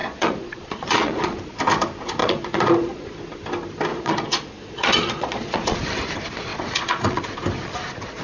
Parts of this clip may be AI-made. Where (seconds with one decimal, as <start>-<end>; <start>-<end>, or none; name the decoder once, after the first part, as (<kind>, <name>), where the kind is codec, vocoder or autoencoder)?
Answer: 0.0-1.4 (vocoder, Vocos); 2.2-3.1; 3.9-5.8; 6.5-7.2

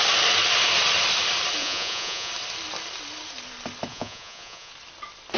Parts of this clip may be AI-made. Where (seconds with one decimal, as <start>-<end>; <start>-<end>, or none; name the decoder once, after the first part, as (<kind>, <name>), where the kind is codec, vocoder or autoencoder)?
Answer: 1.6-2.3 (vocoder, Vocos); 3.9-4.7

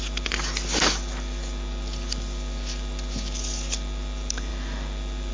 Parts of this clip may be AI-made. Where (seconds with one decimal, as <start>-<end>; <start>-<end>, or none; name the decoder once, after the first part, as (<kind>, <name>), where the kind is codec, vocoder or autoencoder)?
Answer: none

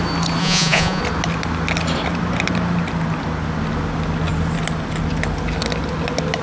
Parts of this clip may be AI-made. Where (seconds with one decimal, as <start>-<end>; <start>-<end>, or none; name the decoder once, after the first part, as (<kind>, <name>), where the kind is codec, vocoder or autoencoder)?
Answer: 0.4-1.0 (vocoder, Vocos)

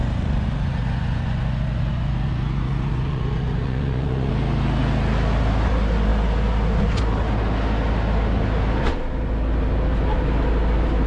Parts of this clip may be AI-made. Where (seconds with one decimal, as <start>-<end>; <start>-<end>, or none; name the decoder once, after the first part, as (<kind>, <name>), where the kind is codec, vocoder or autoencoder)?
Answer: 0.0-4.3 (vocoder, Vocos)

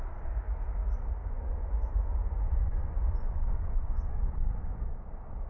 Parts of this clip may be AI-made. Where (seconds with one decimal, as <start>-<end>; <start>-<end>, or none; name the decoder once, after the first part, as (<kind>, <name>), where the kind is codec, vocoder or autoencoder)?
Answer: 1.2-4.1 (vocoder, Vocos)